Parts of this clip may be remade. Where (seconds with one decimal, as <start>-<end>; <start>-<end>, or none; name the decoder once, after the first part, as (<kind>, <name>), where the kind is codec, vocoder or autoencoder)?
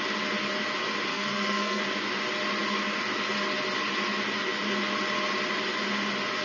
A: 1.1-1.8 (codec, SNAC)